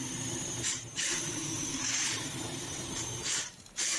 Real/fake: fake